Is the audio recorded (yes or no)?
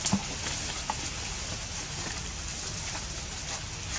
yes